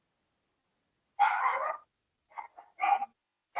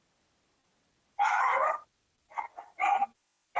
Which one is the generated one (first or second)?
second